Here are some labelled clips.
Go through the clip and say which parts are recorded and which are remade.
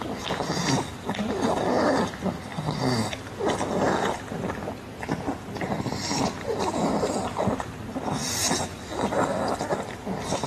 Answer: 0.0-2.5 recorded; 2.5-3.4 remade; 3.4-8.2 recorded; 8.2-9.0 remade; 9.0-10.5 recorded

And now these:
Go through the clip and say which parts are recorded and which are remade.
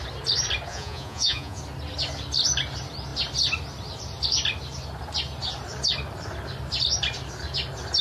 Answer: 0.0-0.7 recorded; 0.7-1.6 remade; 1.6-8.0 recorded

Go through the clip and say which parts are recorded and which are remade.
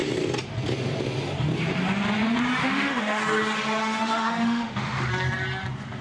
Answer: 0.0-2.6 recorded; 2.6-3.2 remade; 3.2-3.8 recorded; 3.8-5.1 remade; 5.1-6.0 recorded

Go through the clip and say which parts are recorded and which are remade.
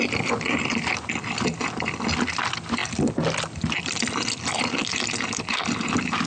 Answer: 0.0-2.8 remade; 2.8-3.4 recorded; 3.4-6.3 remade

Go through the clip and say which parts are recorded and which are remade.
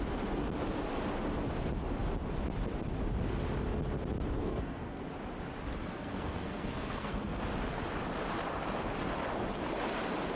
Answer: 0.0-4.4 recorded; 4.4-5.0 remade; 5.0-5.8 recorded; 5.8-7.4 remade; 7.4-10.4 recorded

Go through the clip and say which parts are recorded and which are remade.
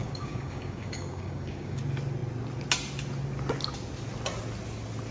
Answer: 0.0-1.8 remade; 1.8-5.1 recorded